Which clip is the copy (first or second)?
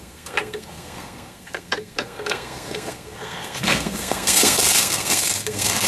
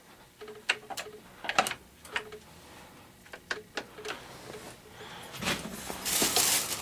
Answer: first